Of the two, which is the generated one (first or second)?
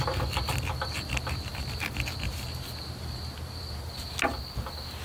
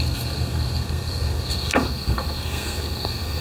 second